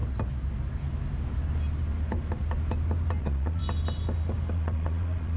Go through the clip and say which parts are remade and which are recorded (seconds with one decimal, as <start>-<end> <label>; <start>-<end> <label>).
0.0-3.2 recorded; 3.2-3.6 remade; 3.6-4.5 recorded; 4.5-5.4 remade